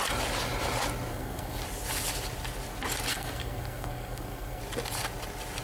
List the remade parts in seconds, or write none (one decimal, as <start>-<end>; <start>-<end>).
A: 1.1-1.6; 3.1-4.6